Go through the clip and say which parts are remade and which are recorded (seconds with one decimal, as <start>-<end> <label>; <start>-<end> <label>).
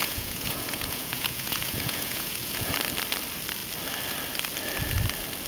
0.0-2.7 remade; 2.7-5.5 recorded